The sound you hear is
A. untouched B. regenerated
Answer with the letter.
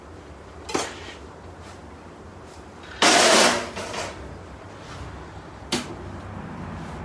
A